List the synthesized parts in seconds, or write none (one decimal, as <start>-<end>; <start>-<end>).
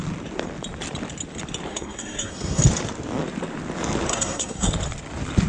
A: 1.7-2.6; 4.1-4.7